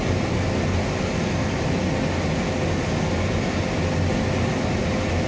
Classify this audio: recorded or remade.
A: recorded